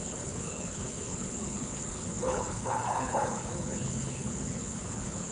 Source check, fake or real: fake